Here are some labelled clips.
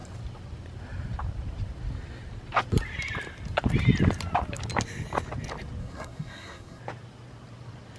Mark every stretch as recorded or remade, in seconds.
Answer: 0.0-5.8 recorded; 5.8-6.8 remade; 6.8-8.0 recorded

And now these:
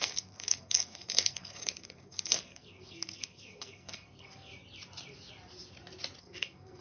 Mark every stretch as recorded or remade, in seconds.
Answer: 0.0-4.5 remade; 4.5-6.2 recorded; 6.2-6.8 remade

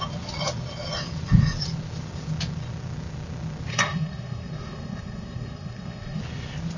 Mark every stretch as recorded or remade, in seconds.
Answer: 0.0-3.7 recorded; 3.7-6.2 remade; 6.2-6.8 recorded

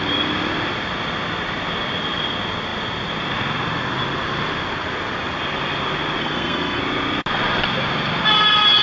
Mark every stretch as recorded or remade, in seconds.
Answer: 0.0-6.2 recorded; 6.2-6.8 remade; 6.8-8.8 recorded

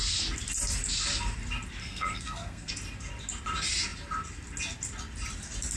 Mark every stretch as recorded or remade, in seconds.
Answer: 0.0-1.8 recorded; 1.8-2.7 remade; 2.7-5.8 recorded

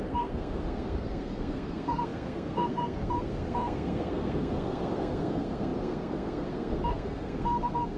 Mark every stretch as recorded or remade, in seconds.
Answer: 0.0-8.0 remade

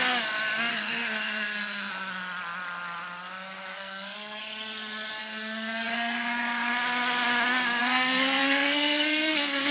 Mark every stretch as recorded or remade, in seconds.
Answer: 0.0-0.7 recorded; 0.7-1.9 remade; 1.9-3.7 recorded; 3.7-4.4 remade; 4.4-5.2 recorded; 5.2-6.7 remade; 6.7-7.8 recorded; 7.8-9.7 remade